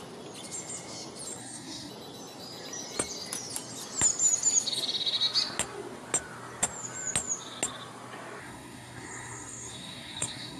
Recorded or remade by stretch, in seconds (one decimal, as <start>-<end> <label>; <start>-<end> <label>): 0.0-1.4 recorded; 1.4-1.9 remade; 1.9-8.4 recorded; 8.4-10.6 remade